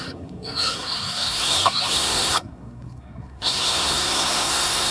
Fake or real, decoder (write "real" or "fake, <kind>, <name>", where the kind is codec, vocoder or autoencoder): fake, codec, SNAC